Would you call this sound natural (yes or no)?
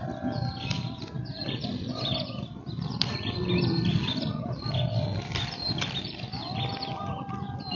yes